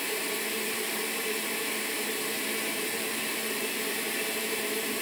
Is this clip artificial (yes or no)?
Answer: yes